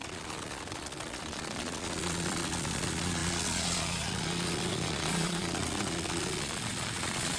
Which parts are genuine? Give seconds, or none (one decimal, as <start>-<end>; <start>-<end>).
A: none